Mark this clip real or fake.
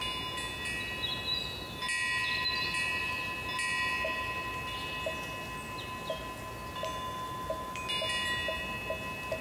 real